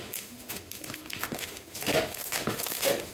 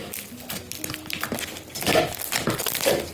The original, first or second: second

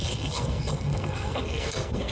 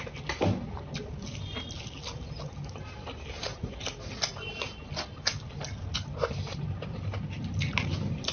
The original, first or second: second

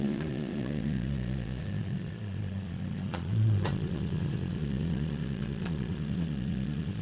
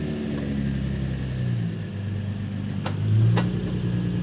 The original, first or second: second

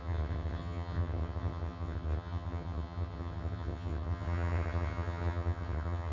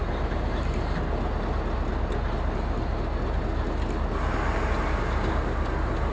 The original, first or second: second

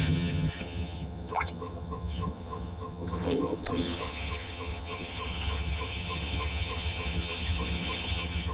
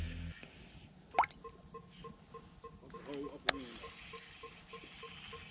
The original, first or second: second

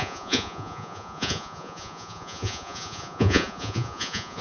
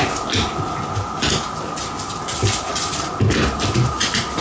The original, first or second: second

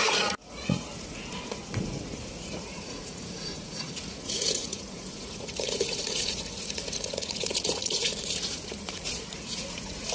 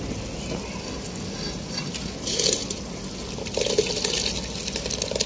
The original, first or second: second